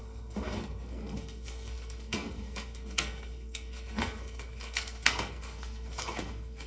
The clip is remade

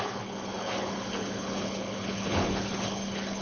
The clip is remade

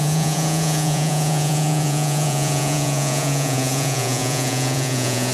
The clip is remade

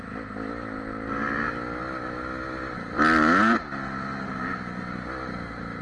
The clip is recorded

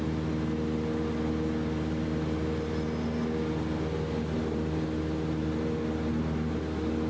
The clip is recorded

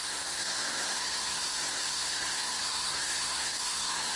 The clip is remade